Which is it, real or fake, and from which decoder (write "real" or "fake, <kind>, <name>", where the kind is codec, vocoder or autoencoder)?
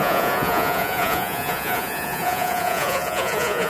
fake, vocoder, Vocos